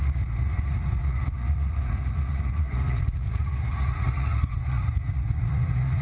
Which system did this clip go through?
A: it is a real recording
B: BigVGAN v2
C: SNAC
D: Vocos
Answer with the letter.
D